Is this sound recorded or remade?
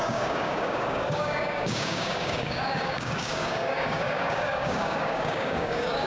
remade